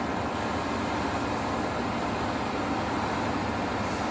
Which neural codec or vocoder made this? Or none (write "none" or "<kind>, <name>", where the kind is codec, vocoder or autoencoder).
none